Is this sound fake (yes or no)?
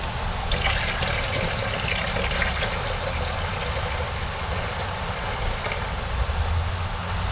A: no